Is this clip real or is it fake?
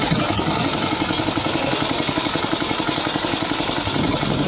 real